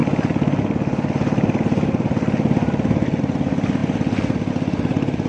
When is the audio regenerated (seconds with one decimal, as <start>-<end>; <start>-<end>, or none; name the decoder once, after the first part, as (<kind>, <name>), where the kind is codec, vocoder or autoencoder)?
none